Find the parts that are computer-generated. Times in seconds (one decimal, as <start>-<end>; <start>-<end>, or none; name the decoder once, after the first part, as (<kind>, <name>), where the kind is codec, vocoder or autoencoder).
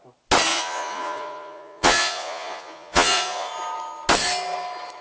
0.5-3.5 (vocoder, Vocos)